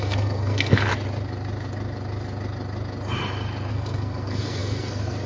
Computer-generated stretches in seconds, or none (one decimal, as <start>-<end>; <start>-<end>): 0.0-0.9; 3.7-5.3